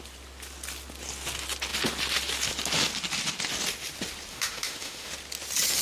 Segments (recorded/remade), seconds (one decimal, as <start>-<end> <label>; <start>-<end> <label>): 0.0-4.3 recorded; 4.3-5.1 remade; 5.1-5.8 recorded